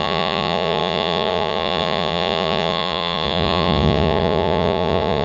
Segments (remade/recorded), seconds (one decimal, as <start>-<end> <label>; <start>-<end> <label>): 0.0-5.2 remade